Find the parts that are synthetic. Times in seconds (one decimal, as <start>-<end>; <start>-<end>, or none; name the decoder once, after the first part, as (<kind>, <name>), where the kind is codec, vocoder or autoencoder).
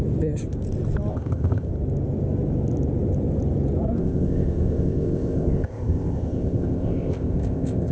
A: 1.1-1.7 (codec, ZipCodec); 4.0-7.9